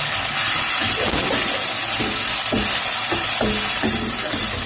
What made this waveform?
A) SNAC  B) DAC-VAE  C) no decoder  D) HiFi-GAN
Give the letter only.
C